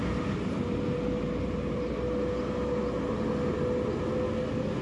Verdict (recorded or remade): recorded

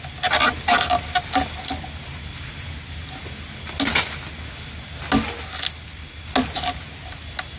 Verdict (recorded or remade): recorded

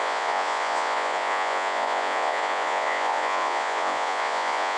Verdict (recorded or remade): remade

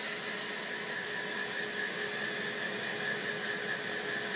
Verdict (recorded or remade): recorded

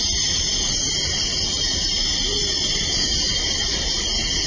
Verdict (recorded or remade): recorded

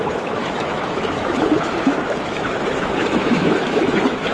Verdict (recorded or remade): remade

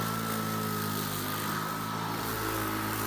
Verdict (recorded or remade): recorded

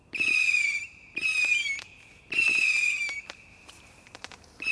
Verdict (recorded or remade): remade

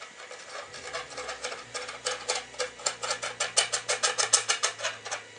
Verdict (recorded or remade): recorded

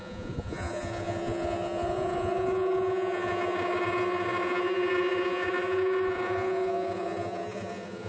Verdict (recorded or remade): remade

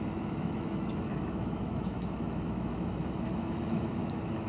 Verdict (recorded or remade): remade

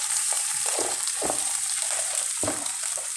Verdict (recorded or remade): remade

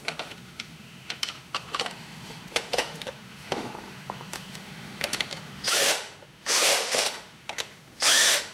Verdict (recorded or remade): remade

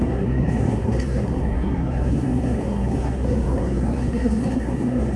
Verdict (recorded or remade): remade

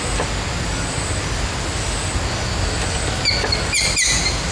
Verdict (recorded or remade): recorded